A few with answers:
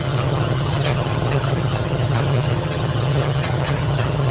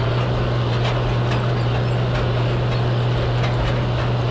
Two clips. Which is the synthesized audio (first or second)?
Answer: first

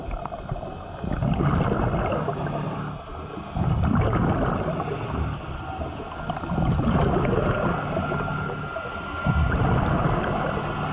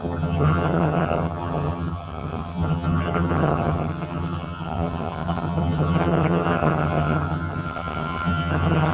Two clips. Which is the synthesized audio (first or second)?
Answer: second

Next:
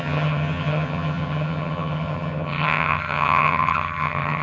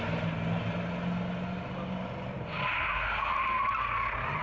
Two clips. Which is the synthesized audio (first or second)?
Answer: first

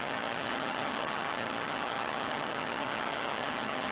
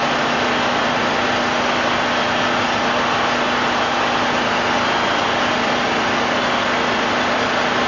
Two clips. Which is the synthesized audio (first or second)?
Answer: first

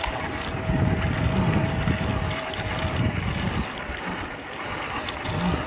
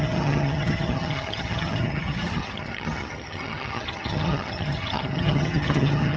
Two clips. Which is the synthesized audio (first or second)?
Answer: second